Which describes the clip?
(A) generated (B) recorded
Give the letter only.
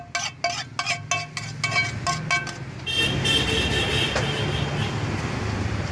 B